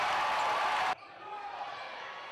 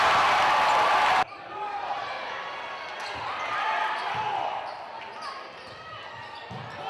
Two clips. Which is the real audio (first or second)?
second